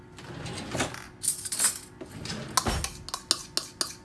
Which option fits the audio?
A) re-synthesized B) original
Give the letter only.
B